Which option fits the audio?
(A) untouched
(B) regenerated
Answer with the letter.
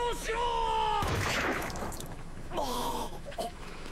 B